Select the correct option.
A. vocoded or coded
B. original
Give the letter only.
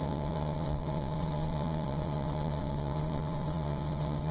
A